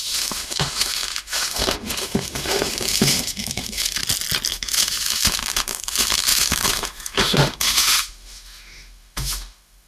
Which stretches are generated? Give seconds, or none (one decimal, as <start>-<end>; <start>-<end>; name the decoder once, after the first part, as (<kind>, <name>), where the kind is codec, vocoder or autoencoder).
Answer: 0.0-4.0 (autoencoder, DAC-VAE); 4.5-9.9

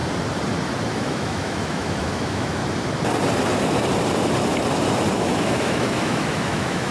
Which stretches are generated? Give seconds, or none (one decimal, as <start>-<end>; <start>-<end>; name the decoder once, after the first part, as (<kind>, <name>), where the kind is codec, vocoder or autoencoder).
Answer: 0.9-2.6 (autoencoder, DAC-VAE); 5.1-6.9

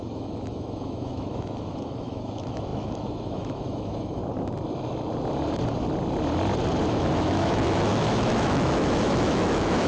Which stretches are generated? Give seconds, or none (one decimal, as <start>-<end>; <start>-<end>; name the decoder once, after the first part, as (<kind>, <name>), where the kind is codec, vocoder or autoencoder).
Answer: 0.0-4.2 (autoencoder, DAC-VAE); 6.9-9.9

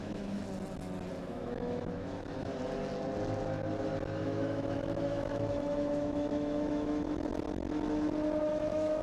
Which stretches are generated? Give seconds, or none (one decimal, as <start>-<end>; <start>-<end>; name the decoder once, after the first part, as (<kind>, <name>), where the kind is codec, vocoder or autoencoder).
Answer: 0.0-0.4 (autoencoder, DAC-VAE); 1.2-2.5; 4.2-7.3; 8.5-9.0

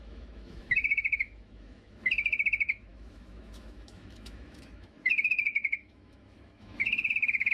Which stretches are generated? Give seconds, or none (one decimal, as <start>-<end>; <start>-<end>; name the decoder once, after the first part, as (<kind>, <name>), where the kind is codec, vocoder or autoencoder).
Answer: 0.0-7.5 (autoencoder, DAC-VAE)